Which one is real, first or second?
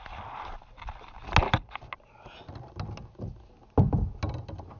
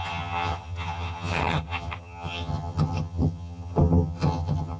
first